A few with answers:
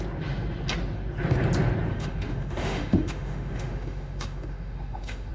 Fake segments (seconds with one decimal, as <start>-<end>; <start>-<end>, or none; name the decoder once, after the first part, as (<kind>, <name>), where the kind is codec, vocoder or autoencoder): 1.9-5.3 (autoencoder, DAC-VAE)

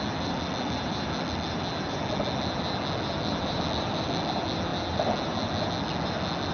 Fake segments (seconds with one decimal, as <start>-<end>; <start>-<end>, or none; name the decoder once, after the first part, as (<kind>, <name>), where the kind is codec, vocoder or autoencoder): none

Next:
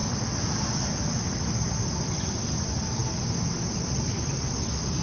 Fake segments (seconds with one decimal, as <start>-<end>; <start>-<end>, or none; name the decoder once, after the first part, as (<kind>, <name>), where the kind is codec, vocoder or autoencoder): none

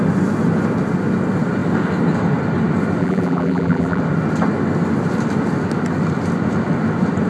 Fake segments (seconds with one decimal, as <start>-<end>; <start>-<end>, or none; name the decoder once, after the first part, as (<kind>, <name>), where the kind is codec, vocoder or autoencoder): 3.0-4.0 (vocoder, BigVGAN v2)